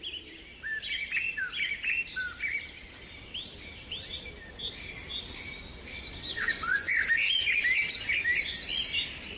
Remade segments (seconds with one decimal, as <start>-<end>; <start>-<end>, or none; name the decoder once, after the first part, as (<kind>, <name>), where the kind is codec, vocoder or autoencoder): 6.3-6.9 (vocoder, Vocos)